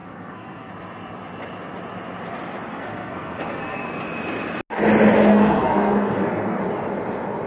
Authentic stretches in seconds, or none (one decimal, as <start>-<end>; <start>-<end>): 0.7-2.7; 3.9-5.3; 6.6-7.5